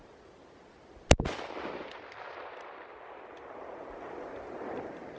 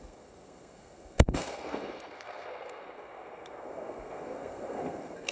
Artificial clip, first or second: second